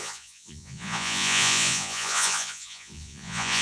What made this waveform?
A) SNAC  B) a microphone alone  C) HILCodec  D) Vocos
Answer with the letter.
D